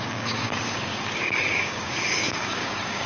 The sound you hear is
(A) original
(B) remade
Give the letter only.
B